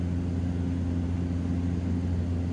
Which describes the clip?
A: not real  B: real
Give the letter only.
B